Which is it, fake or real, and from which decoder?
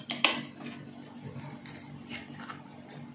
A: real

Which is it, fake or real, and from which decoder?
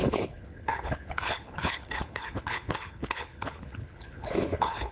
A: fake, codec, HILCodec